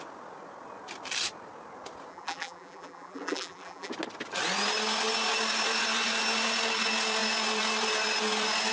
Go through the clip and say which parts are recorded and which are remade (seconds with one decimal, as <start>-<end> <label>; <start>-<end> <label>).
0.0-2.1 recorded; 2.1-3.9 remade; 3.9-8.7 recorded